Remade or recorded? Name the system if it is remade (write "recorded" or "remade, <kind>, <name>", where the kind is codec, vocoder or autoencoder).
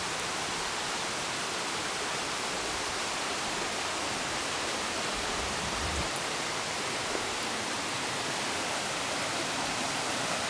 remade, vocoder, BigVGAN v2